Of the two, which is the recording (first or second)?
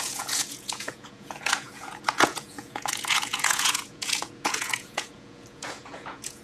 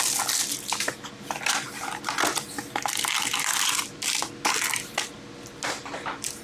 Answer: second